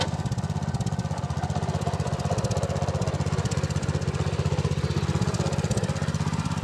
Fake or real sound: real